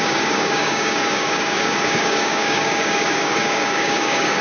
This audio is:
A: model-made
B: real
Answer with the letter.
A